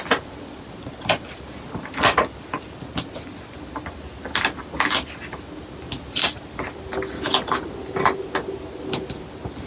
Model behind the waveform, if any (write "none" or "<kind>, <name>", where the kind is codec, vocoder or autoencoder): none